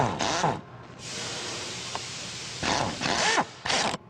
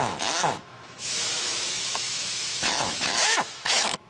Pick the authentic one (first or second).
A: first